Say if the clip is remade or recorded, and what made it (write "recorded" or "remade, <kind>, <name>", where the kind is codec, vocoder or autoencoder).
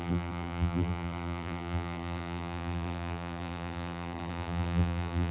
remade, vocoder, BigVGAN v2